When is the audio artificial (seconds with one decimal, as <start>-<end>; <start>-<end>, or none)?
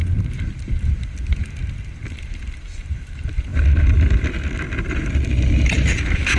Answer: 0.0-3.5; 4.9-6.4